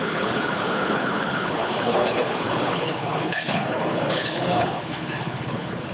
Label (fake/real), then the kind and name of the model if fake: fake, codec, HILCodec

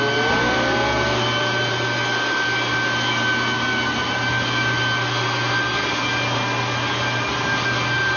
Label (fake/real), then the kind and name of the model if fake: real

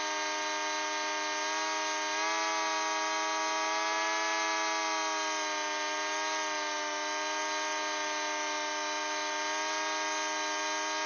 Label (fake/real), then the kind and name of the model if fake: real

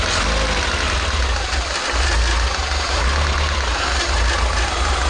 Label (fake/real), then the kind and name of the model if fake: real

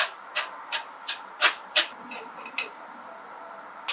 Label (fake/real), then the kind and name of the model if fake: real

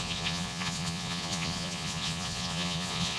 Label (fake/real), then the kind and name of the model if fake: fake, vocoder, Vocos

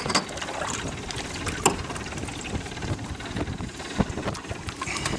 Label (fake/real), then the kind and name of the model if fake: real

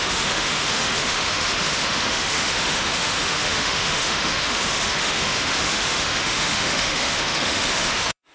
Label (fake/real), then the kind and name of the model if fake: fake, autoencoder, DAC-VAE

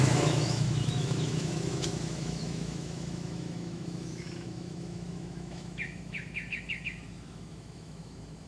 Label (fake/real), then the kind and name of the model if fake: fake, autoencoder, DAC-VAE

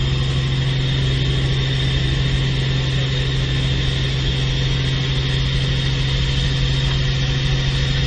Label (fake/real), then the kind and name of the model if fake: real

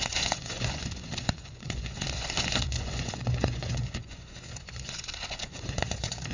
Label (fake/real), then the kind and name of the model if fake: fake, vocoder, Vocos